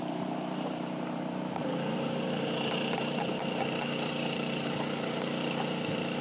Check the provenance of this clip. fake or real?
fake